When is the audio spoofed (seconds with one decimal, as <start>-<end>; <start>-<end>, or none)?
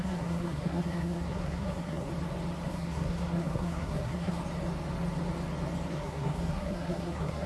0.0-2.1; 2.7-4.4; 5.9-7.5